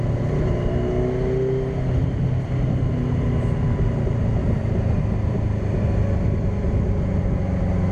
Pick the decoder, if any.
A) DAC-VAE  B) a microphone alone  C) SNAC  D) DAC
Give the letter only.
B